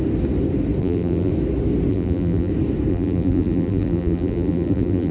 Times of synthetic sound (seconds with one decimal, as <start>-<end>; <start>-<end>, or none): 0.8-1.3; 1.9-2.5; 2.9-5.1